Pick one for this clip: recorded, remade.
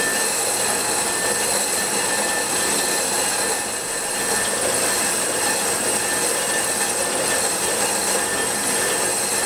recorded